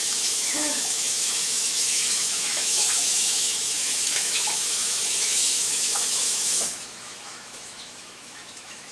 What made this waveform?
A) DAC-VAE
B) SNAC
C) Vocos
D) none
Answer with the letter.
A